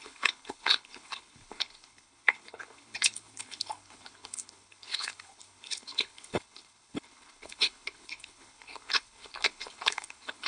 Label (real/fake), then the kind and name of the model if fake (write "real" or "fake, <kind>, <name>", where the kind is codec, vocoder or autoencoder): fake, codec, HILCodec